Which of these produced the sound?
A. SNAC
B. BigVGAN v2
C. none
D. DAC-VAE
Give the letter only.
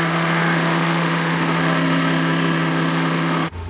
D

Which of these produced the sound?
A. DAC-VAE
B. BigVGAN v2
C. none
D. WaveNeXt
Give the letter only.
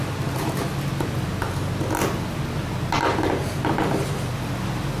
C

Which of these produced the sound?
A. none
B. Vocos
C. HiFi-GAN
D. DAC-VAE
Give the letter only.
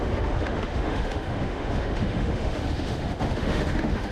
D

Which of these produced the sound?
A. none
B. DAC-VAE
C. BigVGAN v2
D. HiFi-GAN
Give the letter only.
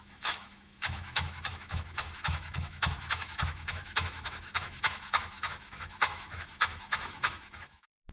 B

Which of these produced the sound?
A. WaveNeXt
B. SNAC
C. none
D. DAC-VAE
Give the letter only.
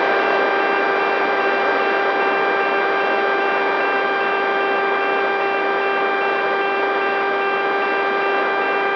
C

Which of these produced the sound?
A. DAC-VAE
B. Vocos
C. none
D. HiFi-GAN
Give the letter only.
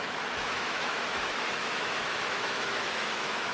A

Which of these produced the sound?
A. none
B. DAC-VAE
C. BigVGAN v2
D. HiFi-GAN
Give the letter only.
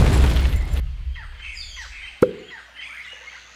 A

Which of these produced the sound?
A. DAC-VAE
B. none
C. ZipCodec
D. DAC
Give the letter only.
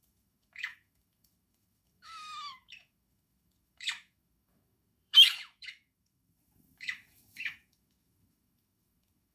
A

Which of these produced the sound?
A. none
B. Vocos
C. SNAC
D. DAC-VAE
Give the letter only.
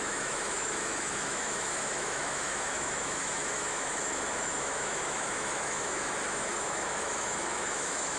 D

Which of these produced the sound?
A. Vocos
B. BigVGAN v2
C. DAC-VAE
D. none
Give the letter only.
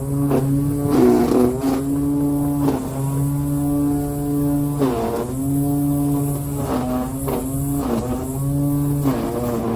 D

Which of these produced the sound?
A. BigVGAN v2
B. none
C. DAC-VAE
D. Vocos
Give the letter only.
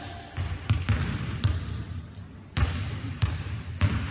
B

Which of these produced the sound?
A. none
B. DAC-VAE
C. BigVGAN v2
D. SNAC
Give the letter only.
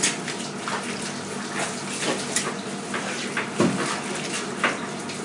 A